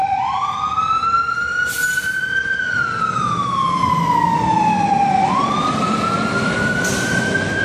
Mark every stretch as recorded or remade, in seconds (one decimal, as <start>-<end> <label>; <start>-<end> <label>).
0.0-7.6 recorded